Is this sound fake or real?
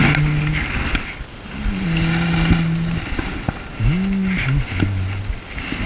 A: real